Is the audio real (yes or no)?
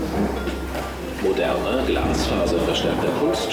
yes